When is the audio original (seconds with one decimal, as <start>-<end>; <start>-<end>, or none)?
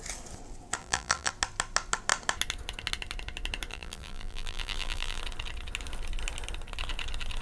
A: 0.0-0.8; 1.3-3.7; 5.2-7.4